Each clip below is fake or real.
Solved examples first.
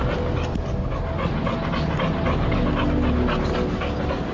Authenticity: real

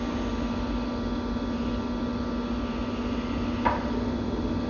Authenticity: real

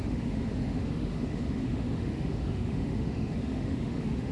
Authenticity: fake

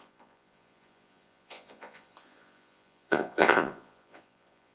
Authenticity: fake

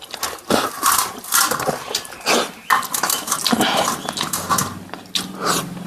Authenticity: real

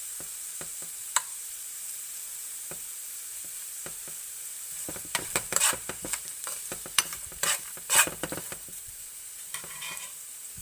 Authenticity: fake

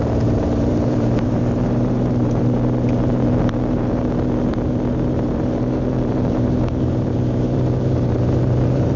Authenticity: fake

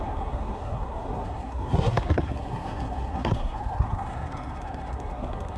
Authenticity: fake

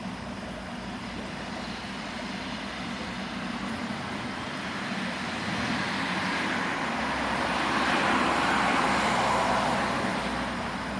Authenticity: real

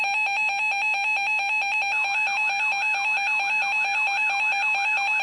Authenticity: real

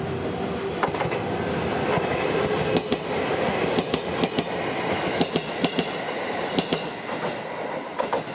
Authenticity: real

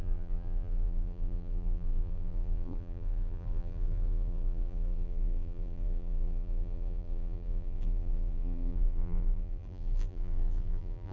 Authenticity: fake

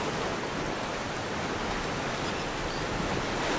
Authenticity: real